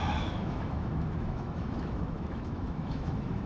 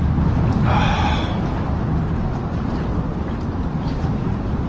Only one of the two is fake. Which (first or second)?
first